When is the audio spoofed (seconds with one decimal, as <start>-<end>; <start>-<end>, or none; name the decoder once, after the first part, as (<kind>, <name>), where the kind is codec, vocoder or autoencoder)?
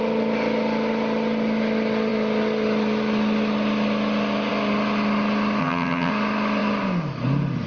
5.6-6.1 (vocoder, HiFi-GAN)